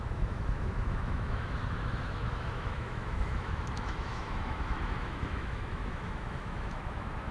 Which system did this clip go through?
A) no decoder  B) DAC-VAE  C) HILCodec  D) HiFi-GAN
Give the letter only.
B